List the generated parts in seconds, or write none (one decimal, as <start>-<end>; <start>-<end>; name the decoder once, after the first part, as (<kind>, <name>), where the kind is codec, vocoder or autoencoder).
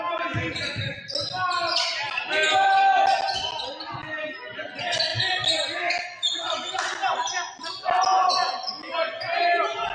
none